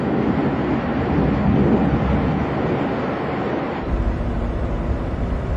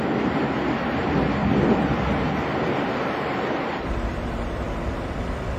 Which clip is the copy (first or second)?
second